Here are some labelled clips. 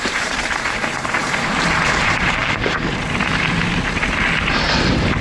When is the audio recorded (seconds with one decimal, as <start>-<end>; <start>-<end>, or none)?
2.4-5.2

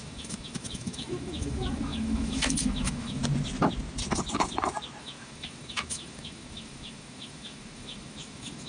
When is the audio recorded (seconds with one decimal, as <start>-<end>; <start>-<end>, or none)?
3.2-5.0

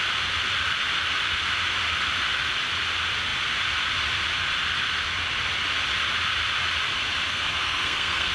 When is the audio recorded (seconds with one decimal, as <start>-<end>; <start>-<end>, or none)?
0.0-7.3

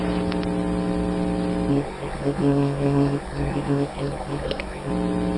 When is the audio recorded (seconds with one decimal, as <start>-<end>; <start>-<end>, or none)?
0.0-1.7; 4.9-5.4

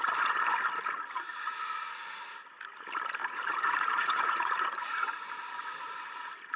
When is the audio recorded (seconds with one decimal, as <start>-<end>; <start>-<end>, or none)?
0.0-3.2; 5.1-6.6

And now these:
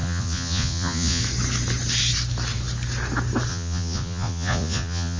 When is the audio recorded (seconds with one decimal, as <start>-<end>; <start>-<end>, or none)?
1.2-3.5

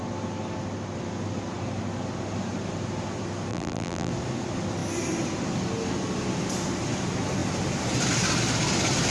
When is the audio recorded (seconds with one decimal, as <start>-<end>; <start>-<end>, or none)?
0.0-3.5; 4.1-9.1